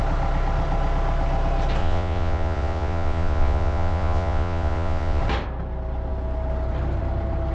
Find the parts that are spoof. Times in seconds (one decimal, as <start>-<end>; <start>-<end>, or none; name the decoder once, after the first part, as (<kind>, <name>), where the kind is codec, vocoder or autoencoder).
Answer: 1.8-5.2 (vocoder, Vocos)